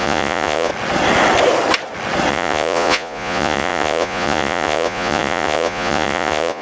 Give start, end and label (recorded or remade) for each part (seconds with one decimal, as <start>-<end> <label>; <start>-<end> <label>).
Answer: 0.0-0.7 remade; 0.7-2.3 recorded; 2.3-6.6 remade